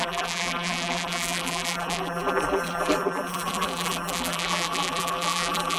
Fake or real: fake